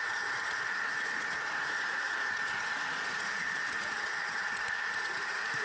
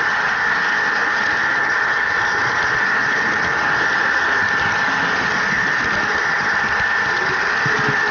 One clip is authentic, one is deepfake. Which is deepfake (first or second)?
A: first